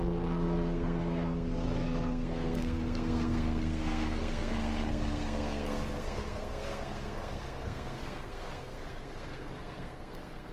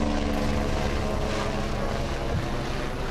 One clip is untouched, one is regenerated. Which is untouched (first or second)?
second